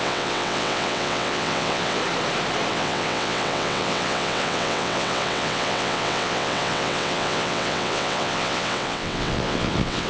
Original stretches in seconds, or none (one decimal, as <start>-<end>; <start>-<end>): 2.0-2.7